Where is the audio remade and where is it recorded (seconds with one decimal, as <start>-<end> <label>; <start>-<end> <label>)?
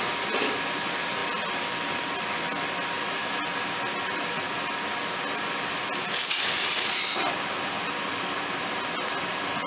0.0-9.7 recorded